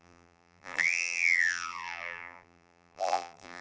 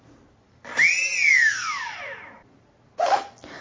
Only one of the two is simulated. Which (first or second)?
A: first